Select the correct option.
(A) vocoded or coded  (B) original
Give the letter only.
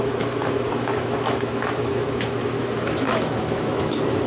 A